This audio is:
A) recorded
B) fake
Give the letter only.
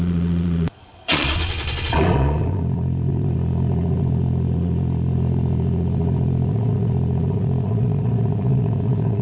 B